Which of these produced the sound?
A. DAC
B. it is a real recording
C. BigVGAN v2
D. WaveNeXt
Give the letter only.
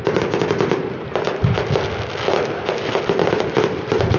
B